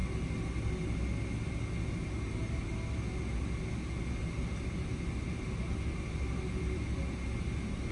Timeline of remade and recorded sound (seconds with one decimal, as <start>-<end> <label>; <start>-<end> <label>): 0.0-7.9 recorded